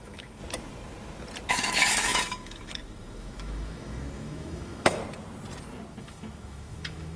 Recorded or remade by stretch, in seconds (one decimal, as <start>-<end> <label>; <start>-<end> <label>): 0.0-0.4 remade; 0.4-1.5 recorded; 1.5-5.0 remade; 5.0-6.0 recorded; 6.0-7.2 remade